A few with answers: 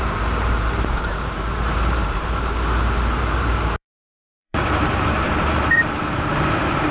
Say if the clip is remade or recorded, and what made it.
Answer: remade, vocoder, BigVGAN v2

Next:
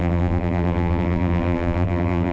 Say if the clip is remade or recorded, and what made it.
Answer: remade, vocoder, BigVGAN v2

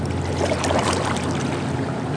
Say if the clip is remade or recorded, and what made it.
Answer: recorded